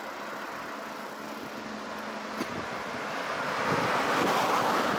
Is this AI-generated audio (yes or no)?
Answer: no